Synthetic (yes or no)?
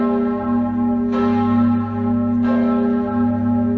no